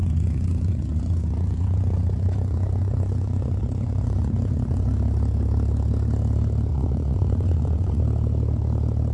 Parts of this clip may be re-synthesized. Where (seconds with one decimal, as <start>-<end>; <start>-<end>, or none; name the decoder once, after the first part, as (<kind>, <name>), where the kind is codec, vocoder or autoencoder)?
0.0-4.9 (vocoder, Vocos); 6.7-8.0